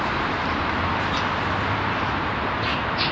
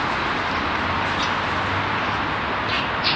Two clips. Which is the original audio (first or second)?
second